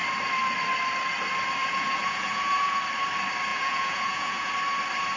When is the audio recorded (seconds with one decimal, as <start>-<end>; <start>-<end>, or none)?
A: 0.0-1.6; 2.8-3.5; 4.5-5.2